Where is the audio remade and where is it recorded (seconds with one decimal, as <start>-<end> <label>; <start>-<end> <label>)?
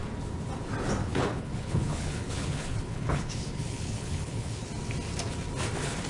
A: 0.0-1.0 recorded; 1.0-4.7 remade; 4.7-6.1 recorded